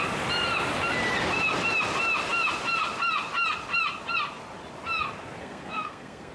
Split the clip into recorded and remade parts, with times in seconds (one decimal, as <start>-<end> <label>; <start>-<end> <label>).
0.0-5.4 recorded; 5.4-6.3 remade